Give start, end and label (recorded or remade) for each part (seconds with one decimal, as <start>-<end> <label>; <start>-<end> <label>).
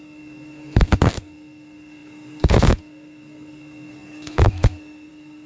0.0-5.5 remade